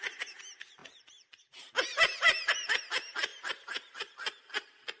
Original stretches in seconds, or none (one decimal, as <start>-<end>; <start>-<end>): 0.0-0.8; 2.8-3.3; 4.1-5.0